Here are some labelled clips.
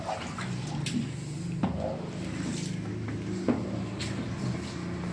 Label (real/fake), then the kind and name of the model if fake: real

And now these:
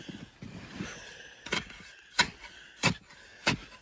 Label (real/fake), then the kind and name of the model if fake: real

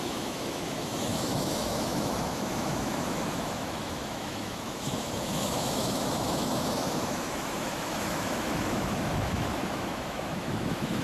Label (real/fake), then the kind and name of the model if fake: fake, autoencoder, DAC-VAE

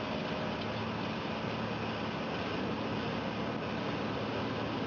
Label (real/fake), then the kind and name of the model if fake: real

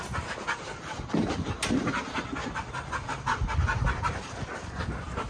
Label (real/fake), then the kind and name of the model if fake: real